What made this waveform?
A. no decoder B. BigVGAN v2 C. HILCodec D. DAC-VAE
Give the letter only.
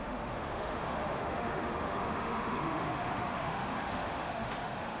D